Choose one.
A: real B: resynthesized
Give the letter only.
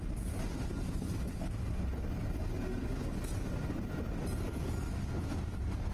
A